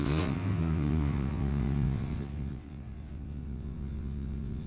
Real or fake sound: fake